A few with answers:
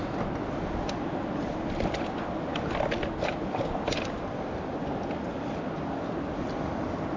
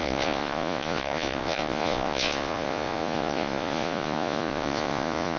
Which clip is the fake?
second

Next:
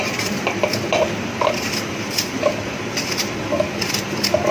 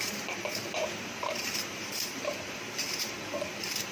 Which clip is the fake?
second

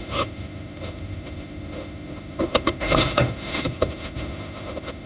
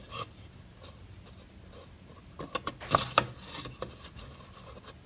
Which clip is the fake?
first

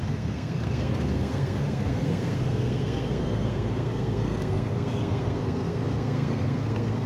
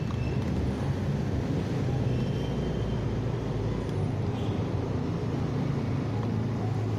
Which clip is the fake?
first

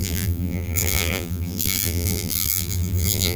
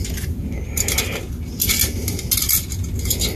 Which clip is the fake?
first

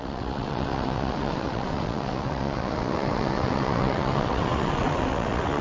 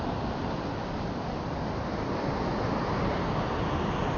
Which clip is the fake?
first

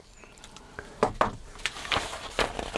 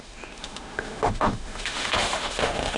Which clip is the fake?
second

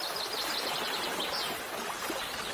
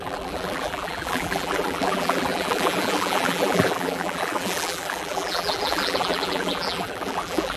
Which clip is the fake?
second